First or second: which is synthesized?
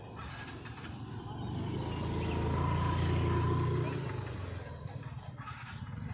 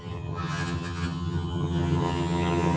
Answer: second